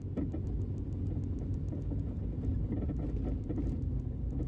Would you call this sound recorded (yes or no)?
yes